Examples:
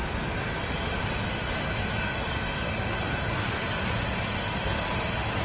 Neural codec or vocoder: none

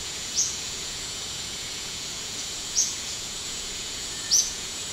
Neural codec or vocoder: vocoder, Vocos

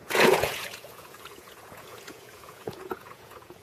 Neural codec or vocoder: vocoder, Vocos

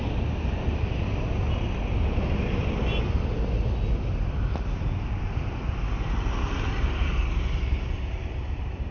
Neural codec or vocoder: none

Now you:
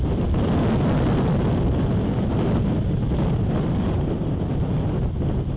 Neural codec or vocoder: none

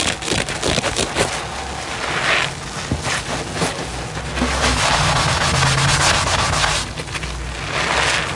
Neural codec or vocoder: none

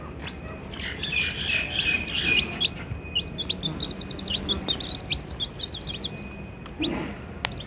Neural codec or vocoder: none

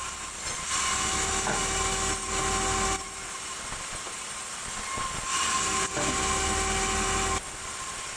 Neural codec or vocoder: none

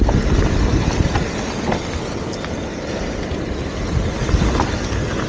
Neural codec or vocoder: none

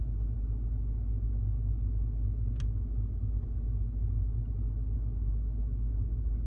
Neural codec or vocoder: none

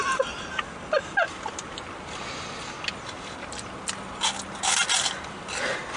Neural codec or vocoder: none